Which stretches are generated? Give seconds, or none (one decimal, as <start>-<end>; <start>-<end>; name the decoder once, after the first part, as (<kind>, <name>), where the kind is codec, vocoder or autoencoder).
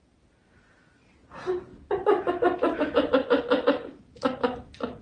none